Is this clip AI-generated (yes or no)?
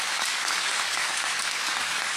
yes